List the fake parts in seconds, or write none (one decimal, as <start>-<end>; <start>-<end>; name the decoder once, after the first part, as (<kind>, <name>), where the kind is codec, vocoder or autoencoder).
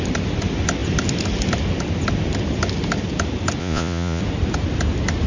3.6-4.2 (vocoder, Vocos)